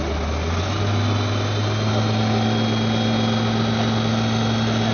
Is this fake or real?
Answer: real